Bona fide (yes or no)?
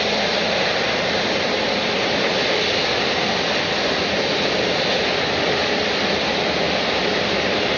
yes